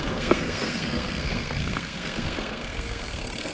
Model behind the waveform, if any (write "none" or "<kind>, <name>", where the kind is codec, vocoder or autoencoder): codec, SNAC